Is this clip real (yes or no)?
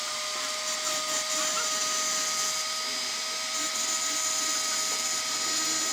yes